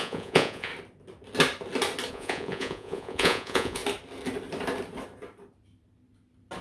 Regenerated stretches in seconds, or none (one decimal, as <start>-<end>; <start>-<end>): 0.0-0.7; 2.1-3.8